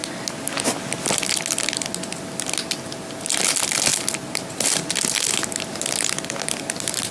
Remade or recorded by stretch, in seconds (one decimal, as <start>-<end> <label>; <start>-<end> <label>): 0.0-7.1 recorded